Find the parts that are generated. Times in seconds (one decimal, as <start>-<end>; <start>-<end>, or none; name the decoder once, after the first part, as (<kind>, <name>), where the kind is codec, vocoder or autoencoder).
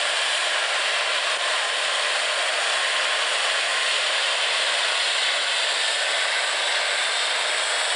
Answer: 0.4-1.3 (vocoder, BigVGAN v2); 3.7-4.9